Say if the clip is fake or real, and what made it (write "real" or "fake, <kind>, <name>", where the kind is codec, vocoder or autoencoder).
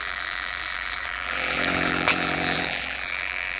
fake, vocoder, BigVGAN v2